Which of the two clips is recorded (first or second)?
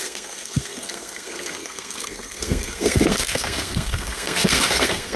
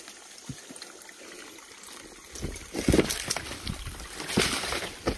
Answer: second